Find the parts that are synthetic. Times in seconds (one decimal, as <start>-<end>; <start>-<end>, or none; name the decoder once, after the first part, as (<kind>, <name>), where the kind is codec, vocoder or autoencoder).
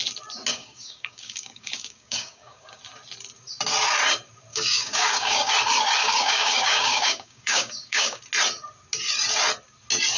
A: 0.5-2.8 (codec, DAC); 4.5-5.5; 6.0-8.2